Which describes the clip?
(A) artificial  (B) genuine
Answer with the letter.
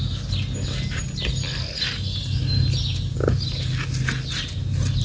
B